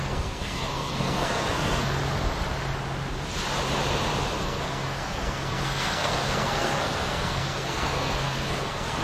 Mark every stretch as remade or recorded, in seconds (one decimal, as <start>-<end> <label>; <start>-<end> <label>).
0.0-2.0 remade; 2.0-4.4 recorded; 4.4-9.0 remade